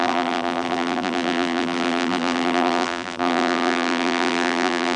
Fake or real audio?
fake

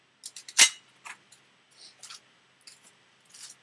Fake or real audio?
real